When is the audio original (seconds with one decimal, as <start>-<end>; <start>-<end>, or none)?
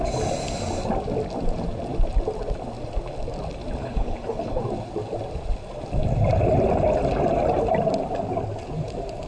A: 0.0-3.8; 4.6-9.3